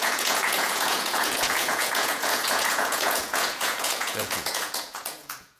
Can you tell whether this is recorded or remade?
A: remade